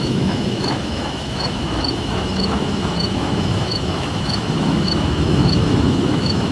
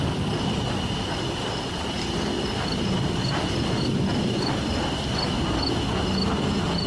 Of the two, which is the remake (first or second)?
first